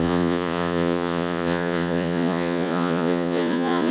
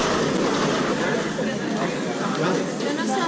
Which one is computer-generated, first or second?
first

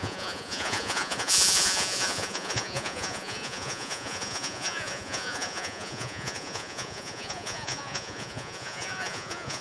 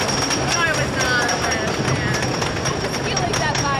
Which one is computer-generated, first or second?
first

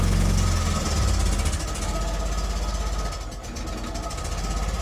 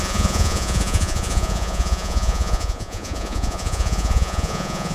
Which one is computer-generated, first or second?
second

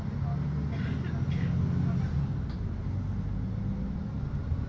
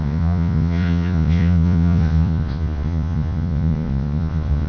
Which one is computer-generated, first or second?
second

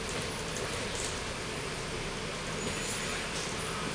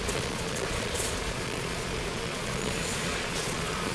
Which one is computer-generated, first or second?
second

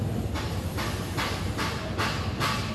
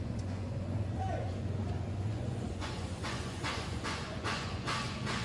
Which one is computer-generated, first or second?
second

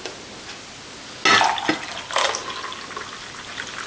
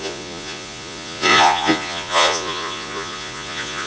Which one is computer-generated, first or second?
second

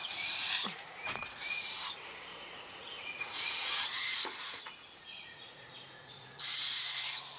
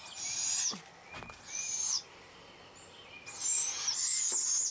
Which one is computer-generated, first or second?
first